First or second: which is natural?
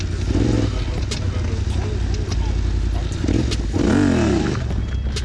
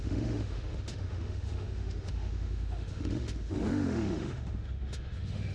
first